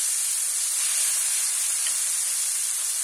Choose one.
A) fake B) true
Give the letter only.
B